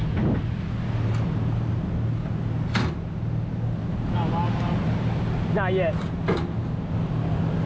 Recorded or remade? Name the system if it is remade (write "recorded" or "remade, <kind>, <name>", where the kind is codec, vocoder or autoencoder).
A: recorded